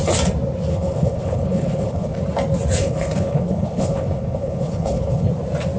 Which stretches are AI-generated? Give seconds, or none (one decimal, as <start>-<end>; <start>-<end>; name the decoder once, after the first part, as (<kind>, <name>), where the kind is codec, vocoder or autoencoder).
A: 0.7-2.2 (codec, HILCodec); 2.8-5.3

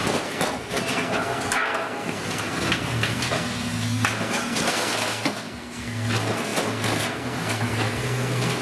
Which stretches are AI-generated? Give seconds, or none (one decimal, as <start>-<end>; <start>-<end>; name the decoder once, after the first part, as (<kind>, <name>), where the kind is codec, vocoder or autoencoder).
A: 0.0-8.6 (codec, SNAC)

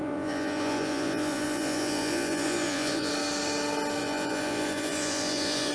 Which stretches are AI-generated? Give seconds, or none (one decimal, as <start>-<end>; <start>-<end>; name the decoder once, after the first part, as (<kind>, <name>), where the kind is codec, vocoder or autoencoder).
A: 0.0-3.1 (vocoder, Vocos); 4.0-5.7

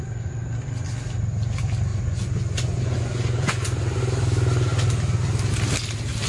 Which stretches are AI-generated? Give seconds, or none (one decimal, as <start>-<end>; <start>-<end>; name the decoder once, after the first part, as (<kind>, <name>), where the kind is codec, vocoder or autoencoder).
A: 1.9-4.0 (vocoder, Vocos)

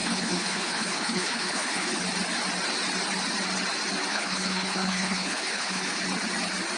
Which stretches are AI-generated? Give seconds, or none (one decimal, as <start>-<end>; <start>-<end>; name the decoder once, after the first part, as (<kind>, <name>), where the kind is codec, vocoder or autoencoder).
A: 0.0-2.0 (codec, HILCodec); 4.1-6.0